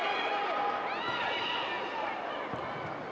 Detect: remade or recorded recorded